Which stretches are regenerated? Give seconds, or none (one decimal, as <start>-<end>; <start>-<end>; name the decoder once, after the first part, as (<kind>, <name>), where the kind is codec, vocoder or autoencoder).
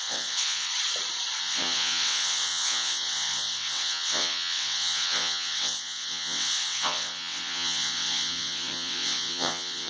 0.0-0.7 (vocoder, WaveNeXt); 1.4-9.9